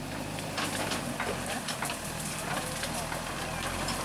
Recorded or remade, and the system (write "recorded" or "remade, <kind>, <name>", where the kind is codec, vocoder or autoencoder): recorded